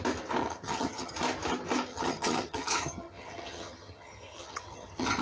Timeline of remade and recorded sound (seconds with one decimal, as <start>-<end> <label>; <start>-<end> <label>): 0.0-0.4 recorded; 0.4-1.1 remade; 1.1-1.9 recorded; 1.9-5.2 remade